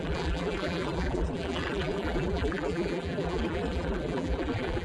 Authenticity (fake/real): fake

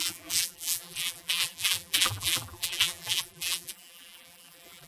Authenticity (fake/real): fake